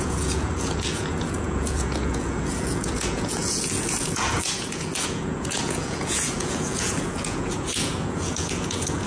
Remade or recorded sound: remade